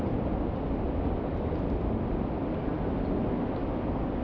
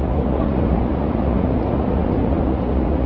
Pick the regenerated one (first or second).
second